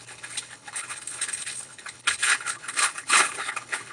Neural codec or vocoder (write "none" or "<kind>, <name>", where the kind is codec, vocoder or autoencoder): codec, HILCodec